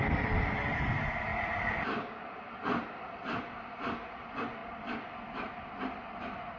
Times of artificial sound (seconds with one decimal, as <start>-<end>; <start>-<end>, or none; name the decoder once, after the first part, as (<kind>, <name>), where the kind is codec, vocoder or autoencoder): none